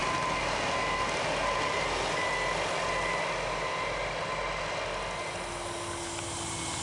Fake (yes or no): no